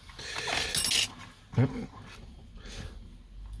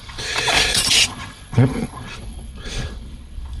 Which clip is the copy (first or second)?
second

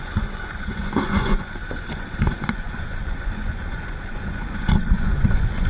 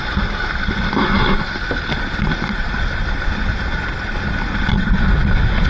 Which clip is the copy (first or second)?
first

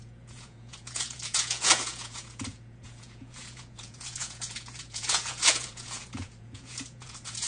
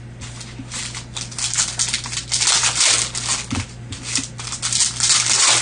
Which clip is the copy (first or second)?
first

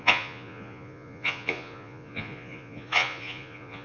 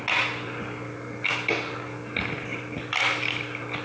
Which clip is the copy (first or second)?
first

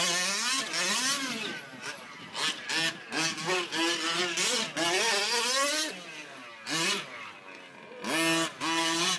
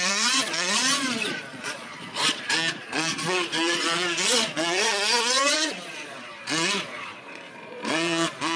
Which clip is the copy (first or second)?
second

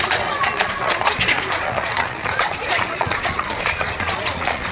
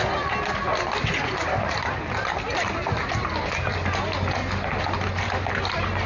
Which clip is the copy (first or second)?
first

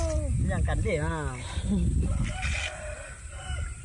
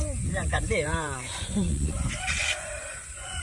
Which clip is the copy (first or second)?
second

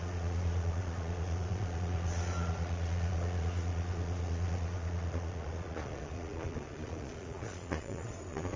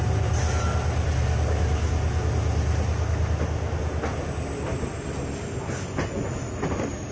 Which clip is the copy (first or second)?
first